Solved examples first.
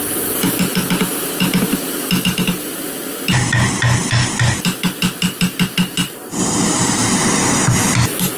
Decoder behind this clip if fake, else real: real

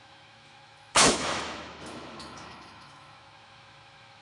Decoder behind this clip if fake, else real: fake, autoencoder, DAC-VAE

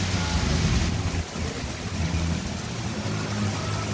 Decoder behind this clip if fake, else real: real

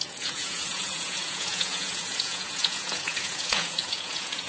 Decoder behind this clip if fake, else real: fake, vocoder, Vocos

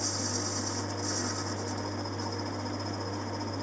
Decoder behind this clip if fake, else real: real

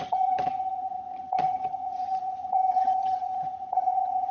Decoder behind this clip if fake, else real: fake, vocoder, HiFi-GAN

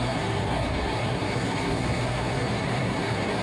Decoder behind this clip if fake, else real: fake, codec, SNAC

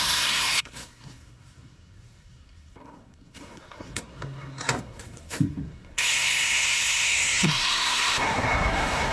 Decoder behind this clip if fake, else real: fake, codec, SNAC